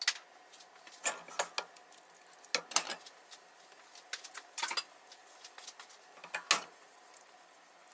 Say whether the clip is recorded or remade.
recorded